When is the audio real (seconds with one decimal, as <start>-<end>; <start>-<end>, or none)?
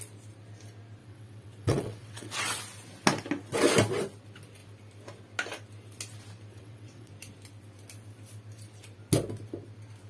0.0-1.0; 2.6-6.5; 7.1-10.1